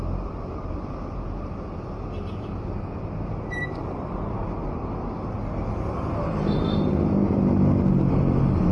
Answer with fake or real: real